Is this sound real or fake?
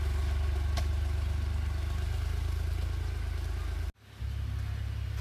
real